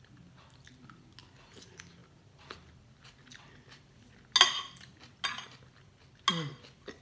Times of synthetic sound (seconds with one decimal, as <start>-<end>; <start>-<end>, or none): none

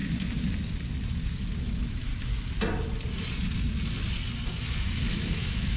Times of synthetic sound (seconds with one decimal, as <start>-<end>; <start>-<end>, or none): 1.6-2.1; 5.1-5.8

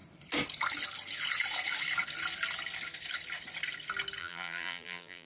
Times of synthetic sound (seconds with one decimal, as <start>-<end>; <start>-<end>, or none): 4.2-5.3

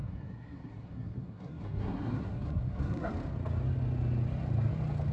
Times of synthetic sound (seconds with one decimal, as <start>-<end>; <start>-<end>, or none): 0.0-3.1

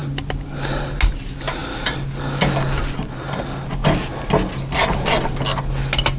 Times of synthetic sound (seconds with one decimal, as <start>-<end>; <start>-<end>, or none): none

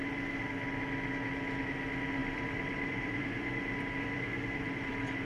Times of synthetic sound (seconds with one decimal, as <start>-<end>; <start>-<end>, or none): 2.2-5.3

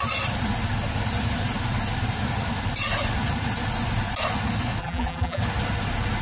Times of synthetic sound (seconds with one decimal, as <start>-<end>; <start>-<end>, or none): 4.8-5.4